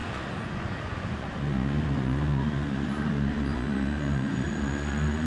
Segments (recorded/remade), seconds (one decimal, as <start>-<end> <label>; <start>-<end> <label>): 0.0-5.3 remade